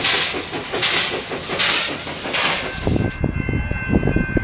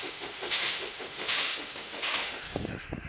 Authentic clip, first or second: first